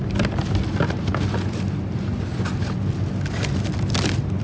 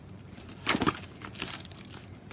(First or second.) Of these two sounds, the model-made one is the second